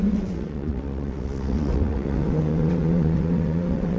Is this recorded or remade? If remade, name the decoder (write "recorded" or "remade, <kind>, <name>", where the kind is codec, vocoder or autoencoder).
remade, vocoder, WaveNeXt